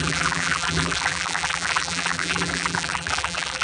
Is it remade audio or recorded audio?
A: remade